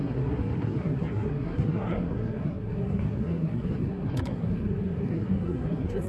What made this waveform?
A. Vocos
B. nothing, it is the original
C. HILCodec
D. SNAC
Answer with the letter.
D